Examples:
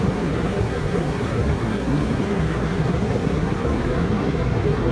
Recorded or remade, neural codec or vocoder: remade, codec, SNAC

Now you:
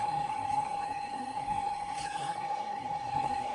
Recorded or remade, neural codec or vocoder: remade, codec, SNAC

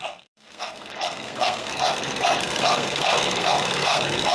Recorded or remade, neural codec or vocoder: remade, codec, SNAC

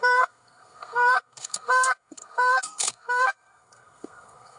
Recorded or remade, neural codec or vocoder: remade, codec, SNAC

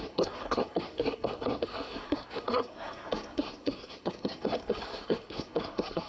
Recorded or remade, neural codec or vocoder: remade, codec, SNAC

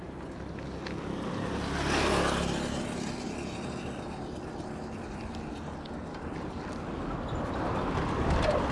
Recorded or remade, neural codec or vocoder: recorded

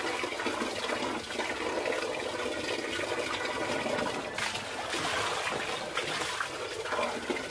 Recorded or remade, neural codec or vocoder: recorded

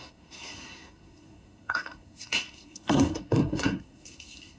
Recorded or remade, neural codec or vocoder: remade, codec, SNAC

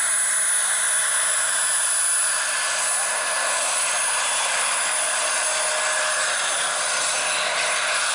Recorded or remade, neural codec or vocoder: recorded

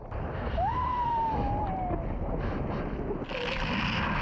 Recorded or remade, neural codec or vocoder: recorded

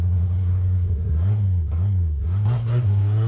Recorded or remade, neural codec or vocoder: remade, codec, SNAC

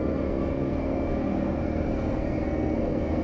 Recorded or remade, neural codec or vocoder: remade, codec, SNAC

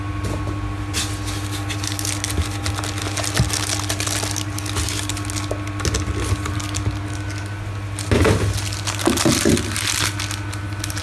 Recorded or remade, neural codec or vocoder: recorded